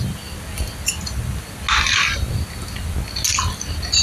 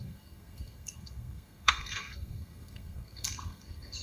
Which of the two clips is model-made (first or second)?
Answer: second